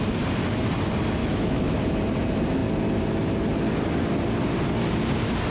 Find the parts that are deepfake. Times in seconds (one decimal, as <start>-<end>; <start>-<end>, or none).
1.2-1.8